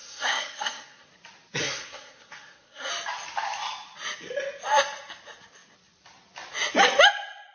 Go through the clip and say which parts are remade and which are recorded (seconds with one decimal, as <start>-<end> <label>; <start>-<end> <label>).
0.0-1.1 remade; 1.1-1.6 recorded; 1.6-2.9 remade; 2.9-7.5 recorded